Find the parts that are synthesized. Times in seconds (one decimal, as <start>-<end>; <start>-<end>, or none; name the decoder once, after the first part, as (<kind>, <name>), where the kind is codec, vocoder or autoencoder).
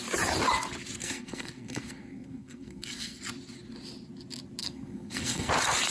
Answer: 1.0-3.2 (codec, SNAC); 4.6-5.5